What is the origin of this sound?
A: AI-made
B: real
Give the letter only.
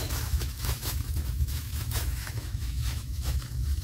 A